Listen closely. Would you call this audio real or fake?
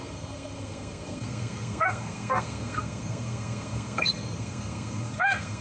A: fake